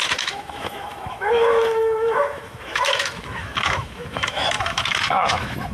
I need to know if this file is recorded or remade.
remade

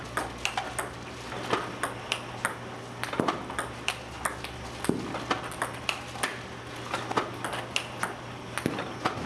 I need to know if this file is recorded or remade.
recorded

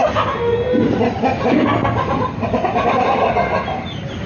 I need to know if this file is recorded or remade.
recorded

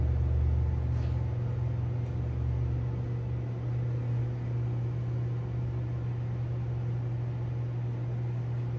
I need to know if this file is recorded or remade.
recorded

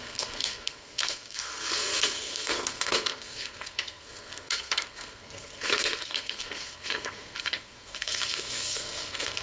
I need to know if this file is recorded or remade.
remade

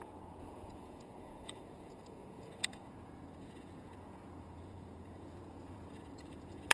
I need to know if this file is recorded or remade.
remade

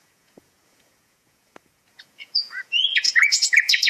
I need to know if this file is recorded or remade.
remade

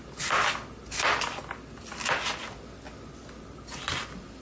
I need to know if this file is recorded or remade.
recorded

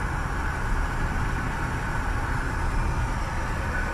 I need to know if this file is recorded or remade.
recorded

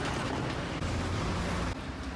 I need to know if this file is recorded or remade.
recorded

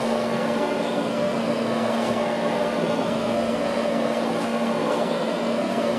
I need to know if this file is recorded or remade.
remade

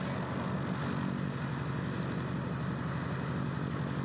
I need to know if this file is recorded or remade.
recorded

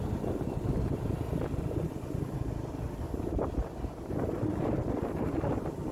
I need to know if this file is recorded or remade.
remade